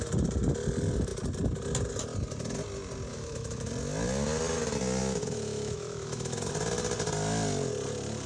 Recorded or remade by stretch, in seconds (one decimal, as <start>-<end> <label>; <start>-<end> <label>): 0.0-3.1 recorded; 3.1-3.7 remade; 3.7-5.0 recorded; 5.0-6.5 remade; 6.5-8.3 recorded